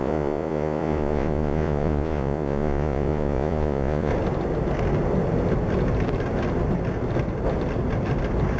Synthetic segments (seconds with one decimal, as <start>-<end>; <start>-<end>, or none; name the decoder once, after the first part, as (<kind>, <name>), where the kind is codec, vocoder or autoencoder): 0.0-4.1 (vocoder, Vocos)